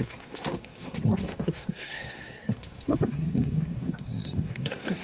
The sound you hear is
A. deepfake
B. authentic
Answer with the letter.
A